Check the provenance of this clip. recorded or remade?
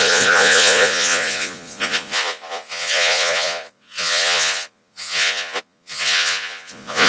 remade